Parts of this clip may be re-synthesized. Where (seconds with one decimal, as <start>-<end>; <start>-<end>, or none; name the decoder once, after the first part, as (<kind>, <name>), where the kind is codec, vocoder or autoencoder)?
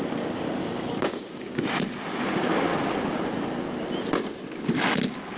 0.6-1.6 (codec, DAC)